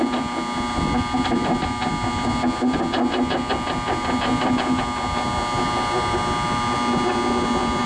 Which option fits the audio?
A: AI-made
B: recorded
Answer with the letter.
B